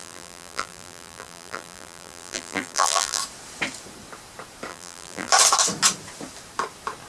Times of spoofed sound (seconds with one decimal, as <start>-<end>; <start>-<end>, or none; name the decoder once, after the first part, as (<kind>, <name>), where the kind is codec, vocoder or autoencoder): 0.0-3.2 (vocoder, BigVGAN v2); 4.7-5.3